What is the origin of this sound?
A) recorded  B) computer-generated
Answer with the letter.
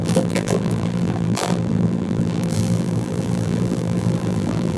B